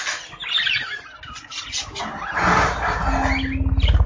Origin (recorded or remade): recorded